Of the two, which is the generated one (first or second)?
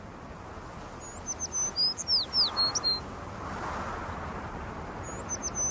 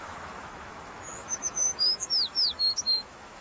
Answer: second